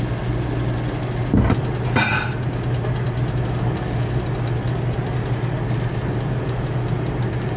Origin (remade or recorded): recorded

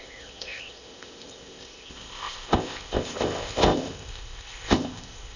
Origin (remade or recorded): remade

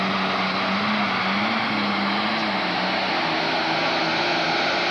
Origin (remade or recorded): recorded